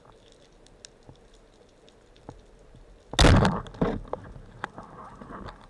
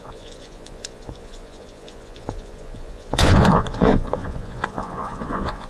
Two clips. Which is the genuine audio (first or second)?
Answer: first